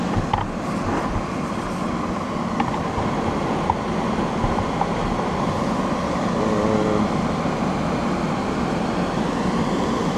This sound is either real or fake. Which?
real